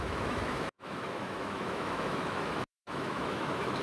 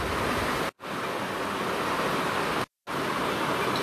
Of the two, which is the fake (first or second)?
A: first